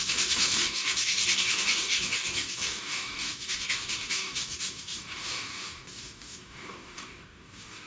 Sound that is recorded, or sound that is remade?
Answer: remade